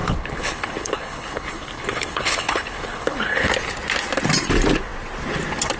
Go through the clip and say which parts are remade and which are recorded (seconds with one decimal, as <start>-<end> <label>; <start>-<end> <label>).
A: 0.0-3.5 remade; 3.5-5.8 recorded